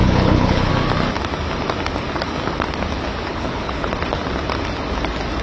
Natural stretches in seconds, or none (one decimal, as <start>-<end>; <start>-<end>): 0.7-3.3; 3.9-5.4